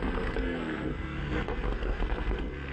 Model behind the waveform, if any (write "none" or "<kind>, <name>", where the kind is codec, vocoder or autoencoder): codec, SNAC